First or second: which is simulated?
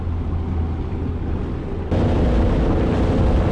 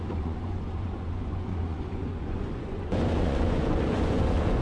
second